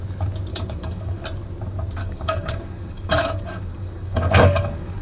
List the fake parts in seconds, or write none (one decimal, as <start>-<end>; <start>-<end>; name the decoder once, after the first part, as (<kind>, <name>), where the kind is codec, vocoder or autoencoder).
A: 0.5-1.2 (codec, DAC); 2.0-5.0

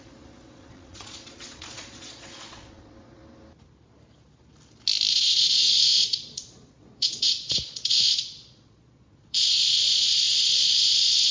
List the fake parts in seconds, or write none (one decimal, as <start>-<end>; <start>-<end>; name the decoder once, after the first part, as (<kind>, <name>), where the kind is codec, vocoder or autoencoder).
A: 0.0-3.2 (vocoder, Vocos); 5.1-11.3

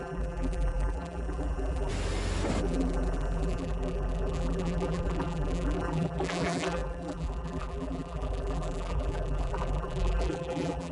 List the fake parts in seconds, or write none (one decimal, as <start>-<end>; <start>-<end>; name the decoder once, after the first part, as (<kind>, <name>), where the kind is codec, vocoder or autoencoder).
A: 0.0-1.9 (vocoder, BigVGAN v2); 2.6-10.9

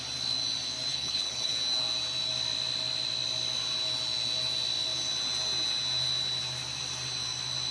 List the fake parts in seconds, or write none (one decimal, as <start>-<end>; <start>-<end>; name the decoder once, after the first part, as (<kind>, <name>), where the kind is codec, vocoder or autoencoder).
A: 0.9-1.5 (codec, HILCodec)

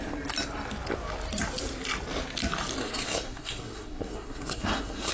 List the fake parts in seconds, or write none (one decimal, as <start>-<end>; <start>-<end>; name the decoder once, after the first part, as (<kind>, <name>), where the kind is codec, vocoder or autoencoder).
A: 2.8-5.1 (codec, SNAC)